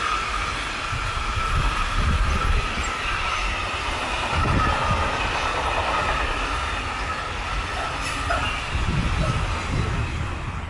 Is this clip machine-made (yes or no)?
no